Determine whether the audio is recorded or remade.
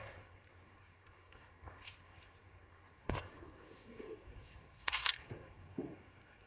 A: remade